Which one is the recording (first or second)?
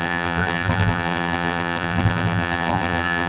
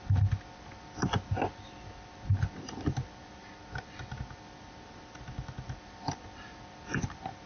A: second